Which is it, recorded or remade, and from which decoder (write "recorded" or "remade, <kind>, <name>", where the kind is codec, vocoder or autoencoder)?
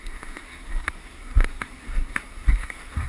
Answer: remade, codec, SNAC